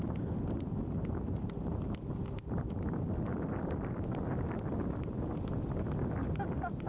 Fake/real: real